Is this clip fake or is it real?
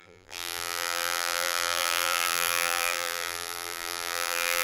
fake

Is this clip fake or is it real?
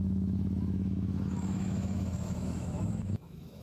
fake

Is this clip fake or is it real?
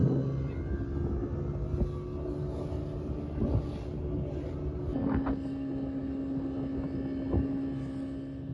real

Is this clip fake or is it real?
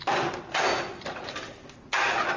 real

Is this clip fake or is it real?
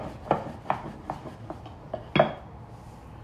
real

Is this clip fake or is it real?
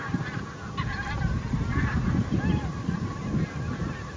real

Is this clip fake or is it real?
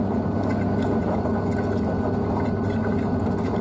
real